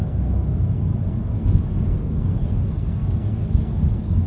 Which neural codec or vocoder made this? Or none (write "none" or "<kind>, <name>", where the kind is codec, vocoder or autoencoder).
codec, SNAC